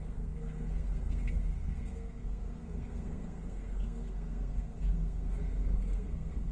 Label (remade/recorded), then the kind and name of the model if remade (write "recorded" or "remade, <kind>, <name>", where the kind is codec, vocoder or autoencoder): remade, codec, SNAC